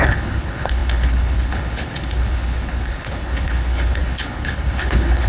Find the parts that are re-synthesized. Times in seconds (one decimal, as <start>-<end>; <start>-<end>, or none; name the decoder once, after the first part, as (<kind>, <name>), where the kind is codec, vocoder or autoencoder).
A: 0.0-5.3 (codec, HILCodec)